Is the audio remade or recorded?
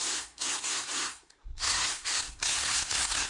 remade